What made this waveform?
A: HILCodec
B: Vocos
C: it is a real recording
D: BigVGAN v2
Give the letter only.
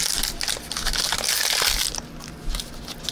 C